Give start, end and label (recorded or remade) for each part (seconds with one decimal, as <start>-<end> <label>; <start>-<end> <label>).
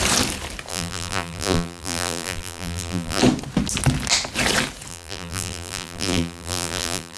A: 0.0-0.7 recorded; 0.7-3.2 remade; 3.2-4.9 recorded; 4.9-7.2 remade